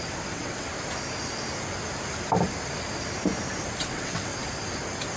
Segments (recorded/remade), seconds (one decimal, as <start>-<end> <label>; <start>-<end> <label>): 0.0-0.7 remade; 0.7-3.8 recorded; 3.8-4.3 remade; 4.3-5.2 recorded